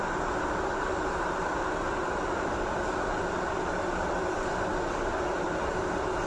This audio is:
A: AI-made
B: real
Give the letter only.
B